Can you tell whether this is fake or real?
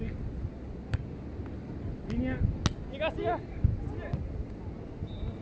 real